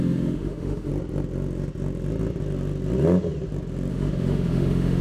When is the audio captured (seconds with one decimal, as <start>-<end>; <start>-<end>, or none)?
0.9-3.9

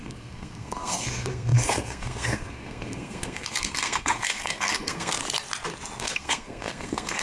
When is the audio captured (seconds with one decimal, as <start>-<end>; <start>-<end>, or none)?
5.2-6.0

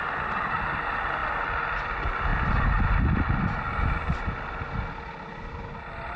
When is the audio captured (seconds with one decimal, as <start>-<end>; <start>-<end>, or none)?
0.0-6.2

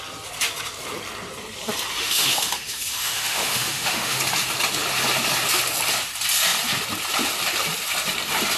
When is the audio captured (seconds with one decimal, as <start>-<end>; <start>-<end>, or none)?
0.0-1.9; 4.2-8.6

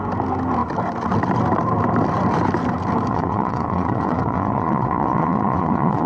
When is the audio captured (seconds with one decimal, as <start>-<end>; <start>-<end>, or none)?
0.0-3.1

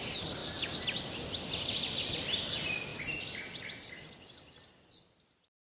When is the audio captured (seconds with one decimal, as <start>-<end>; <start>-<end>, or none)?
0.0-5.6

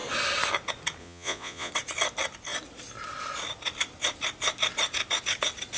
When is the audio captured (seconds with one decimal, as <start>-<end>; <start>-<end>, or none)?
0.0-1.0; 1.7-5.8